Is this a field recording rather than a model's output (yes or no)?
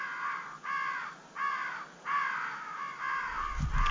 yes